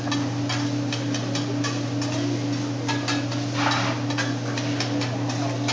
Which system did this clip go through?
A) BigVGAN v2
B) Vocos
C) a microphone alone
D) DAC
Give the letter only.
C